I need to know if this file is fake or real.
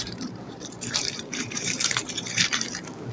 fake